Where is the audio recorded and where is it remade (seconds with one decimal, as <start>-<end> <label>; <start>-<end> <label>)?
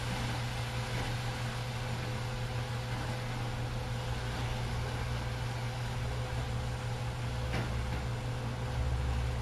0.0-9.4 recorded